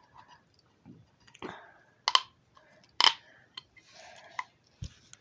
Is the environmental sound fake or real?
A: real